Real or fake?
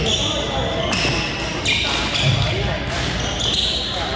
real